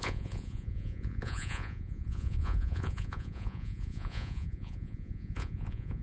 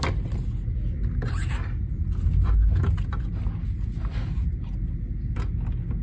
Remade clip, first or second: first